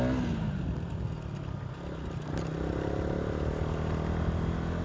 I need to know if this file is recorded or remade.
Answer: recorded